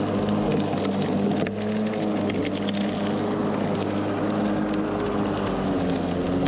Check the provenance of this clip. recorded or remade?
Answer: recorded